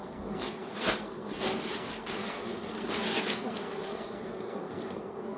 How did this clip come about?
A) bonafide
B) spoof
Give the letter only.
B